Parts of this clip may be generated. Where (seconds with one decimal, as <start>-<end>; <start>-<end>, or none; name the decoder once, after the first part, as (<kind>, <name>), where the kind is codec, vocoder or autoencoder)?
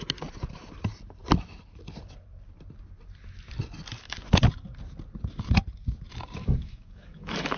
6.4-7.6 (codec, DAC)